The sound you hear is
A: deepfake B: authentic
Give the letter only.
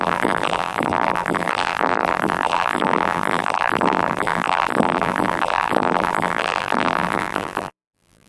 A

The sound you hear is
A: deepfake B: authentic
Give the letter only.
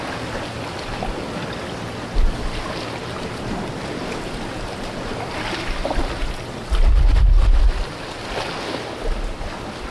B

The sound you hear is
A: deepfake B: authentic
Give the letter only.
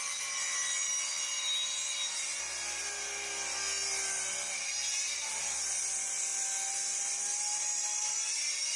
B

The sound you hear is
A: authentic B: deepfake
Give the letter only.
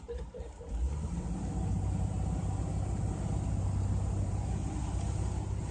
A